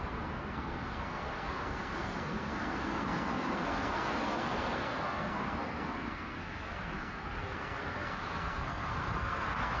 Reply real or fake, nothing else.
fake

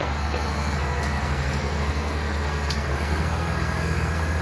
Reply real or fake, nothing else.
fake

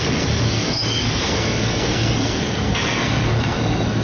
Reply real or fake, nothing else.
fake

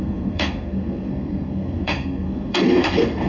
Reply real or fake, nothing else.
fake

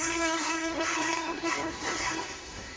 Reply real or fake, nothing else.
fake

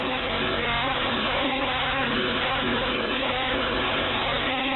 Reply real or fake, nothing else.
fake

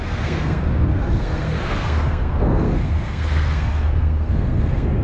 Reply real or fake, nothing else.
fake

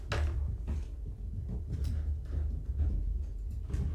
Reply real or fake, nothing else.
real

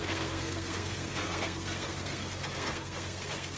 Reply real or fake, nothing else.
fake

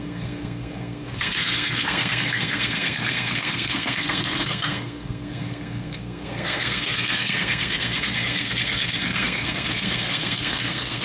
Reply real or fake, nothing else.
fake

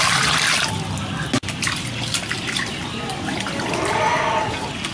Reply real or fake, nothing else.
real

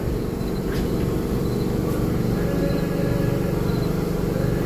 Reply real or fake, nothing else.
real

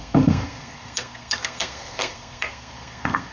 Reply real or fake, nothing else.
fake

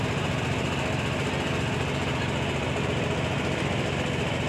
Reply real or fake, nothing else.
real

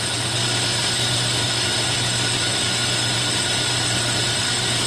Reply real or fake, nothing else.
real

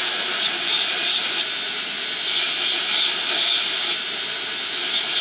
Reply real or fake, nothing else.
real